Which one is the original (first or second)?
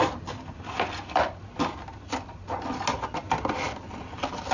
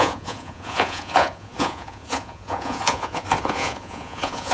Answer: first